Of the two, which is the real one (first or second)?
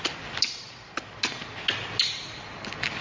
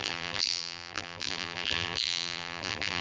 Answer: first